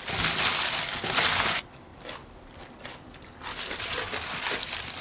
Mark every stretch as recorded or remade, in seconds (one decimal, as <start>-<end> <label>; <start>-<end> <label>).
0.0-5.0 recorded